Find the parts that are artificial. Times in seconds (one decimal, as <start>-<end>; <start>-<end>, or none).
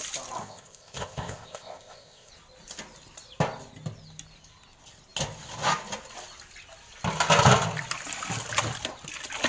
0.4-2.3